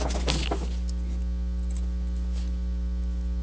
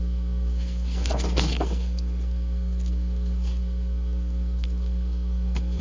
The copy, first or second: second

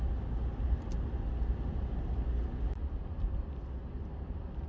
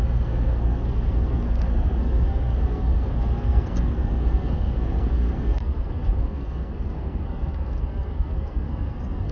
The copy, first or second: second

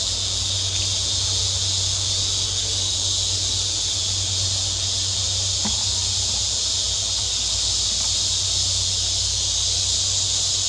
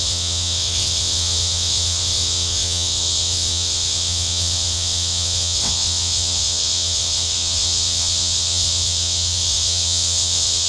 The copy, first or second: second